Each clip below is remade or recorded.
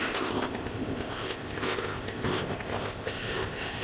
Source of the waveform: remade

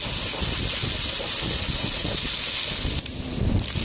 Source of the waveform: recorded